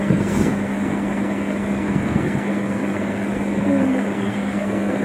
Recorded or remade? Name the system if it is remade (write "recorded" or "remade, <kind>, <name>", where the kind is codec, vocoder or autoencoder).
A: remade, codec, SNAC